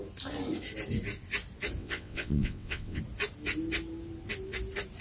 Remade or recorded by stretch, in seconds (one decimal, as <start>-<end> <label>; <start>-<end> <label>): 0.0-1.8 recorded; 1.8-3.0 remade; 3.0-5.0 recorded